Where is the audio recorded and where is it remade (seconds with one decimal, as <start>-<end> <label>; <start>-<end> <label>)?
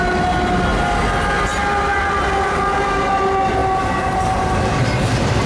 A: 0.0-3.6 recorded; 3.6-5.5 remade